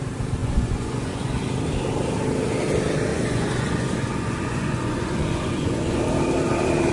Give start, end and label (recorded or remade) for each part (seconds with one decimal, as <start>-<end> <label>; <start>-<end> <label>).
0.0-0.4 recorded; 0.4-1.4 remade; 1.4-3.1 recorded; 3.1-6.0 remade; 6.0-6.9 recorded